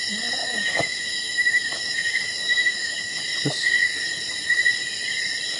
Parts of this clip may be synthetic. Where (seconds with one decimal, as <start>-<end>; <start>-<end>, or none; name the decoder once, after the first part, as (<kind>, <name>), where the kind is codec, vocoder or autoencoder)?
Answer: 0.4-3.2 (autoencoder, DAC-VAE)